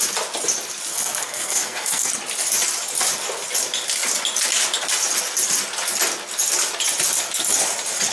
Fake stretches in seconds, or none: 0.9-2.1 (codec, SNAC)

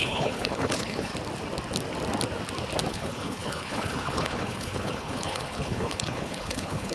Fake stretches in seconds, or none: 0.0-1.1 (codec, HILCodec); 2.9-6.9

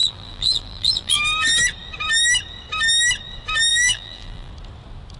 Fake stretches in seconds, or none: 0.0-1.2 (vocoder, BigVGAN v2); 3.7-4.5